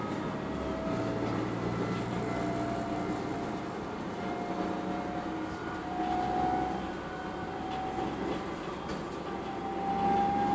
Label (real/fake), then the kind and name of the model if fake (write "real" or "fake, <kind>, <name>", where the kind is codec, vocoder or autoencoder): real